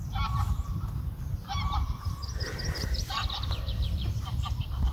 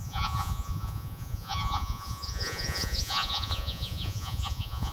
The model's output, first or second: second